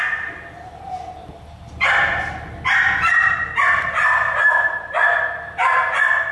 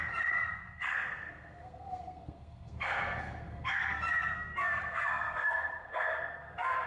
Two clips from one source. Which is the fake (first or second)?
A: second